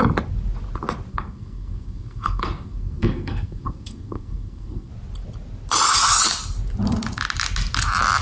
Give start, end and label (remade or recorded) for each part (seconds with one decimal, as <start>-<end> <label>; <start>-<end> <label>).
0.0-1.1 recorded; 1.1-4.9 remade; 4.9-8.2 recorded